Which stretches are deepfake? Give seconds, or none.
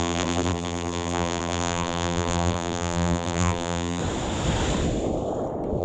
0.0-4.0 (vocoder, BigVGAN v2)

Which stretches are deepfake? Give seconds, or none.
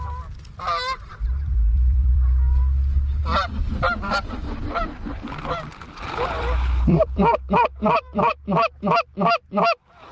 1.1-2.6 (vocoder, BigVGAN v2); 3.2-8.3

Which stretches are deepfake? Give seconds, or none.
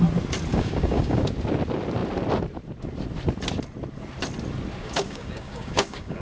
0.5-1.2 (codec, DAC); 4.8-6.2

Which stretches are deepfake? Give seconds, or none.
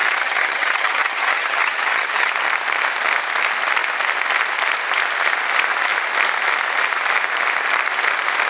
0.0-2.3 (vocoder, HiFi-GAN)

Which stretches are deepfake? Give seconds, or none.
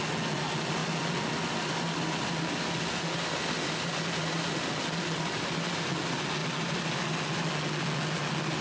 0.8-6.0 (vocoder, BigVGAN v2); 6.4-7.3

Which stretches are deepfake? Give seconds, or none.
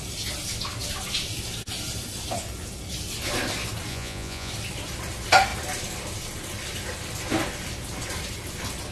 3.9-4.5 (vocoder, Vocos)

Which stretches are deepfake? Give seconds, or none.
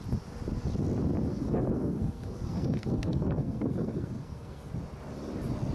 1.3-4.7 (codec, SNAC)